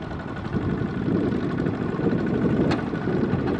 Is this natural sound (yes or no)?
yes